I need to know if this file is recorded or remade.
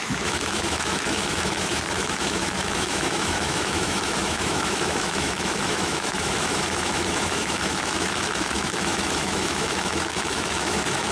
remade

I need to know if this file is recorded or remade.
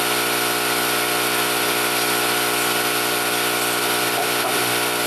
recorded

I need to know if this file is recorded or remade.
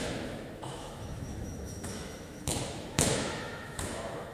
remade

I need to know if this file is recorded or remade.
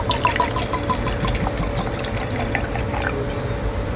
recorded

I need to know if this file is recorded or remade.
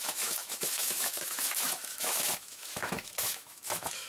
remade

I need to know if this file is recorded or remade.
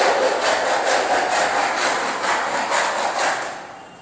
recorded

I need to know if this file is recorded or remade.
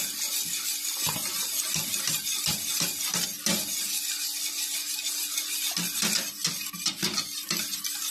recorded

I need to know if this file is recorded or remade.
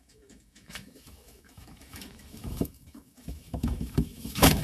remade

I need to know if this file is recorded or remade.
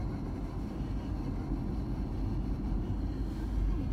recorded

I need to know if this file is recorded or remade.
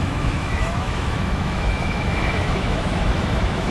remade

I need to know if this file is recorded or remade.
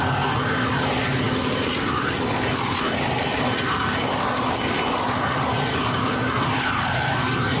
recorded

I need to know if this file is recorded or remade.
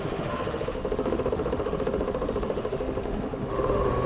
remade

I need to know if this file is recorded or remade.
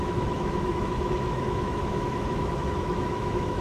remade